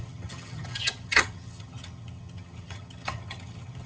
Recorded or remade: remade